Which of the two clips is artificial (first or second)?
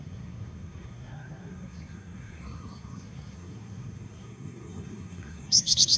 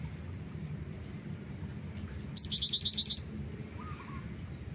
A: first